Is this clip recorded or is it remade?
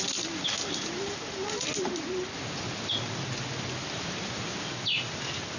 recorded